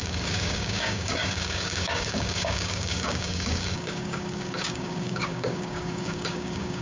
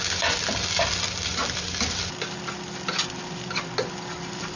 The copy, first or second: first